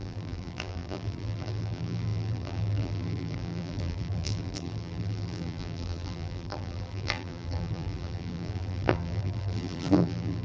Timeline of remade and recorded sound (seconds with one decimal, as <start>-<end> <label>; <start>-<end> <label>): 0.0-10.4 remade